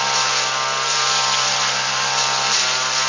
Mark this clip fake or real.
real